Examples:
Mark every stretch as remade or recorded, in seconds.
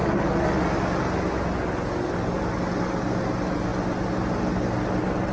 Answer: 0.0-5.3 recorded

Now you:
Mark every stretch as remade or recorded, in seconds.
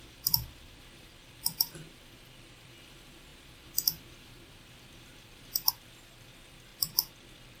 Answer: 0.0-6.7 remade; 6.7-7.6 recorded